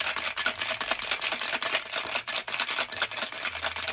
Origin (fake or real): real